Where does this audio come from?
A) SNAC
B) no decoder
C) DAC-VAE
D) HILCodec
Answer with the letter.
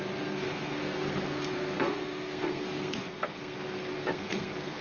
A